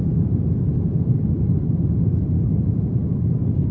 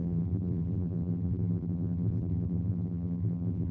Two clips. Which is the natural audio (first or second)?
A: first